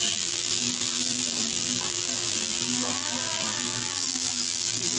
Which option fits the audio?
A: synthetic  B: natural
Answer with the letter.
A